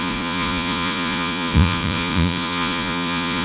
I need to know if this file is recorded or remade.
remade